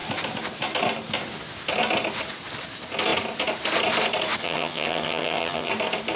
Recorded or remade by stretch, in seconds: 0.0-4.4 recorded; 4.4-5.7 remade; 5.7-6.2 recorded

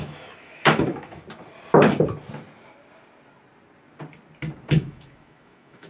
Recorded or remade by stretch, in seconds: 0.0-1.2 remade; 1.2-4.7 recorded; 4.7-5.9 remade

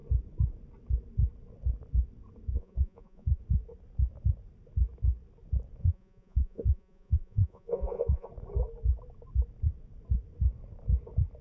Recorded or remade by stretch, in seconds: 0.0-2.5 recorded; 2.5-3.4 remade; 3.4-5.8 recorded; 5.8-8.3 remade; 8.3-11.4 recorded

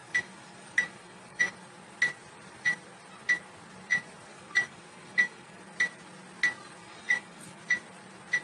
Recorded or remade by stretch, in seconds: 0.0-1.5 remade; 1.5-4.3 recorded; 4.3-5.6 remade; 5.6-6.8 recorded; 6.8-7.6 remade; 7.6-8.4 recorded

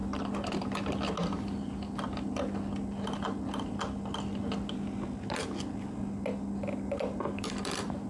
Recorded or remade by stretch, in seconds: 0.0-8.1 recorded

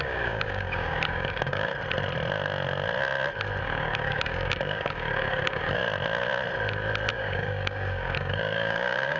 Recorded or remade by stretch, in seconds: 0.0-1.7 remade; 1.7-3.6 recorded; 3.6-5.8 remade; 5.8-7.1 recorded; 7.1-9.2 remade

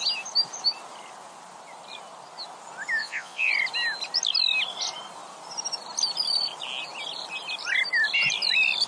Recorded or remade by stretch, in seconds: 0.0-3.0 recorded; 3.0-3.5 remade; 3.5-8.9 recorded

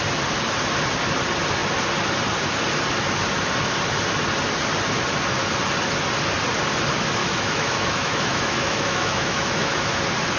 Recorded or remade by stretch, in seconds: 0.0-7.2 recorded; 7.2-10.0 remade; 10.0-10.4 recorded